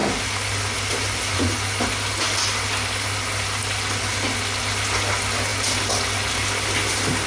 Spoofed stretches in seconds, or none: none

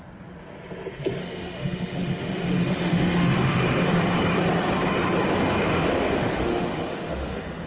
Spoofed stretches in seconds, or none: 1.2-4.0 (autoencoder, DAC-VAE); 5.7-7.7